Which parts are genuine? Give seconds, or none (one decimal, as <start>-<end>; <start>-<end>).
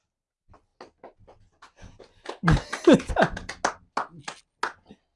0.0-5.2